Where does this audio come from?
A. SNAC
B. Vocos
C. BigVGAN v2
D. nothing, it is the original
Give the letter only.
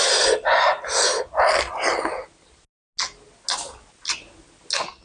D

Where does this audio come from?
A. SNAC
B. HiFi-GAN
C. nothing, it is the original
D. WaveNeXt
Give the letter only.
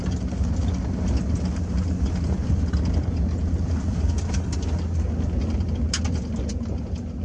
C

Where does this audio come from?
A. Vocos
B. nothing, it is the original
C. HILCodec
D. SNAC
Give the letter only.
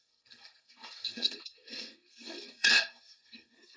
D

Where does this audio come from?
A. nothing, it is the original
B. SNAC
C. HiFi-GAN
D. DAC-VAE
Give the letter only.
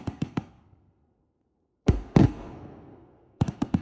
B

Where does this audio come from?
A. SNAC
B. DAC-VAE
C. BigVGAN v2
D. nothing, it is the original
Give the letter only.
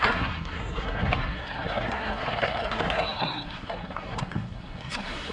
A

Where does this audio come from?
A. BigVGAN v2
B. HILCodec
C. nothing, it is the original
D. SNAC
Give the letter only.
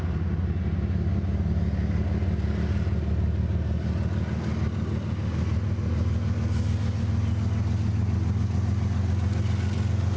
C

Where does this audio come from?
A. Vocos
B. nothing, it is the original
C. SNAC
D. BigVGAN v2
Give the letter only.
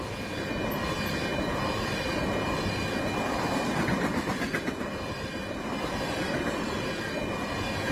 B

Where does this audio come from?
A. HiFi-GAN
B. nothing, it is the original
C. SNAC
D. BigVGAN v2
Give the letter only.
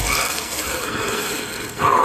C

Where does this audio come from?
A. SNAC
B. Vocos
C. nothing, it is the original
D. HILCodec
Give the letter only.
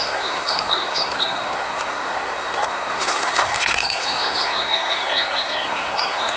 A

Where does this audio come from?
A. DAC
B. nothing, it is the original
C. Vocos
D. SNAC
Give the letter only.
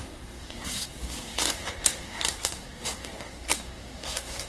D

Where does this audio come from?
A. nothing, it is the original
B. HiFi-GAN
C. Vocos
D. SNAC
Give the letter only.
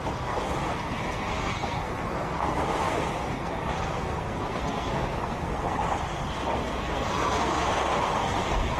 D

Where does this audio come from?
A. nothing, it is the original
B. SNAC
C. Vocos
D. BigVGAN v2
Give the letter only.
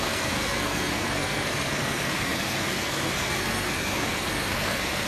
B